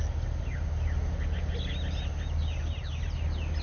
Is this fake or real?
real